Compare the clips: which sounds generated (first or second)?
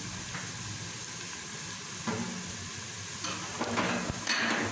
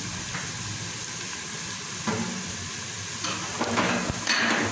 second